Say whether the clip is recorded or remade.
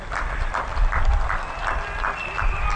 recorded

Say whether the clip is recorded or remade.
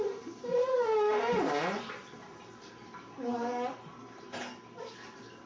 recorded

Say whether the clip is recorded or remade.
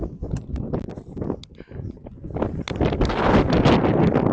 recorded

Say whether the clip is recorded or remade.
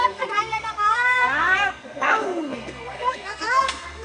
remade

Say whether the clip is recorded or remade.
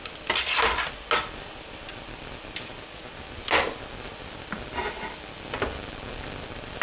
recorded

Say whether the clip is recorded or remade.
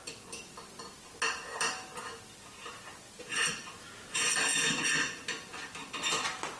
recorded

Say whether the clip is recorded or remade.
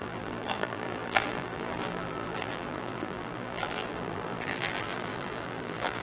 remade